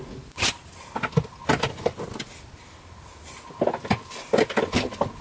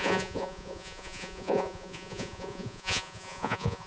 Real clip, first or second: first